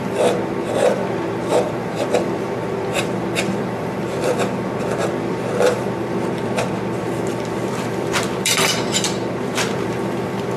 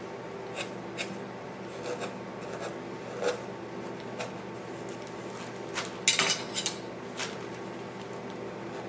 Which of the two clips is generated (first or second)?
first